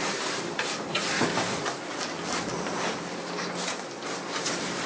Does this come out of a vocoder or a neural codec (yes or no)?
no